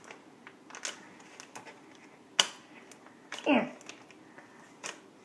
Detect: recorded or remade recorded